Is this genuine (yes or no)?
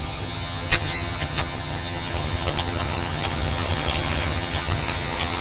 no